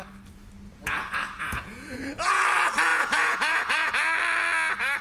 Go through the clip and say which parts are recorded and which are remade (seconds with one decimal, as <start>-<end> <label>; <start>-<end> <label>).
0.0-0.7 recorded; 0.7-2.4 remade; 2.4-2.9 recorded; 2.9-3.9 remade; 3.9-5.0 recorded

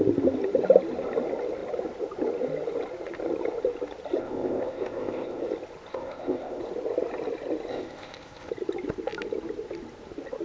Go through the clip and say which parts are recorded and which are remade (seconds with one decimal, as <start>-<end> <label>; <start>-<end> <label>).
0.0-4.2 recorded; 4.2-5.4 remade; 5.4-5.9 recorded; 5.9-6.6 remade; 6.6-7.7 recorded; 7.7-8.5 remade; 8.5-10.4 recorded

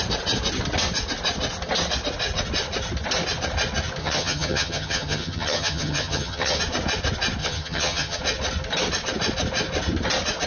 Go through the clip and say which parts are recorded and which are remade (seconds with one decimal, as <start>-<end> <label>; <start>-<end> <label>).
0.0-4.0 recorded; 4.0-6.6 remade; 6.6-7.4 recorded; 7.4-8.2 remade; 8.2-10.5 recorded